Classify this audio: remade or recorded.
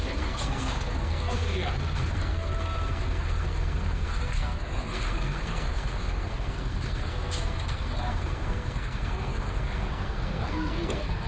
remade